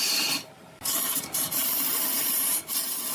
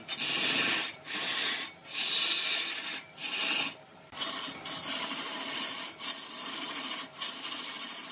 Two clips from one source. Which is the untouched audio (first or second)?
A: second